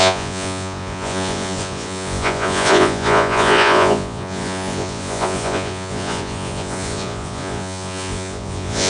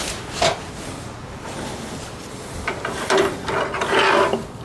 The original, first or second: second